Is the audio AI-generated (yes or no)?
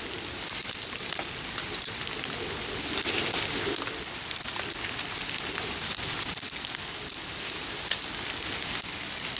no